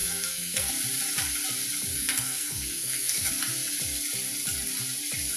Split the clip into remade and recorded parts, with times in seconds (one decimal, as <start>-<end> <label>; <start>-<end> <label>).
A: 0.0-0.7 remade; 0.7-1.9 recorded; 1.9-3.3 remade; 3.3-5.4 recorded